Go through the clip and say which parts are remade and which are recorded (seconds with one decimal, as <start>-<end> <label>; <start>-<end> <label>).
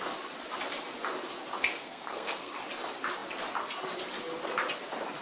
0.0-1.7 recorded; 1.7-2.5 remade; 2.5-5.2 recorded